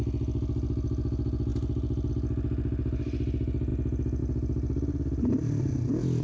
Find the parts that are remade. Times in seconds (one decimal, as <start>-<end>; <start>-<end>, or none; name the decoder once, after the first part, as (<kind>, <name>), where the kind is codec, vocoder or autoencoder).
none